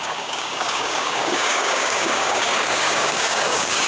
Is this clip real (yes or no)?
no